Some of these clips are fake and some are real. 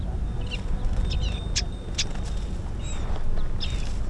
real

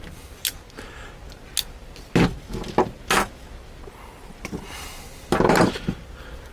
real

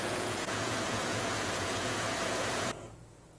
fake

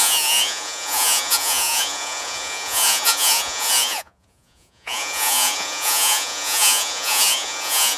fake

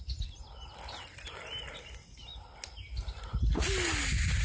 real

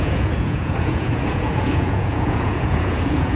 fake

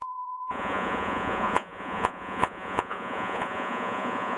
fake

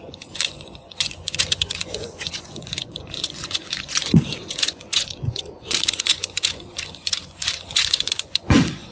fake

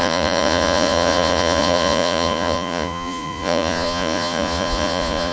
fake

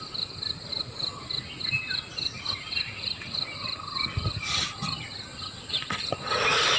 real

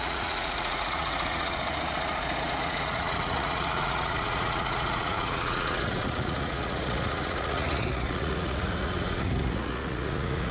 fake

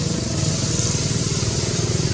real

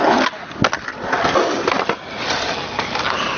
real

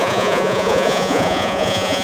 fake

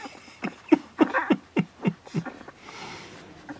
real